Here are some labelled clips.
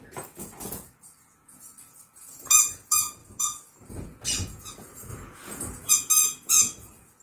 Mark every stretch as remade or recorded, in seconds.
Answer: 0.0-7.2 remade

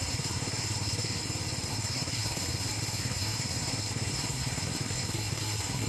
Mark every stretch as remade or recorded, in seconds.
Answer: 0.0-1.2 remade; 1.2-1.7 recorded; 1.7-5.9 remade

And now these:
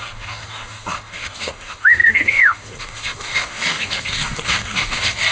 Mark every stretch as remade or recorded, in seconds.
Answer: 0.0-5.3 remade

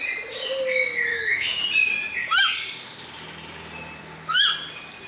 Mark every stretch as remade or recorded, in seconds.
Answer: 0.0-1.1 recorded; 1.1-1.6 remade; 1.6-5.1 recorded

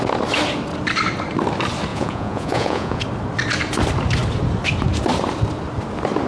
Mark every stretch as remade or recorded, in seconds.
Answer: 0.0-1.9 recorded; 1.9-3.0 remade; 3.0-6.3 recorded